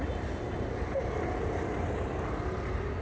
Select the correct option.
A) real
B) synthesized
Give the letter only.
A